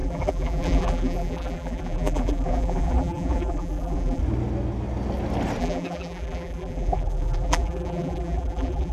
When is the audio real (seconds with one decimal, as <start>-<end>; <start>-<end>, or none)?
4.2-5.6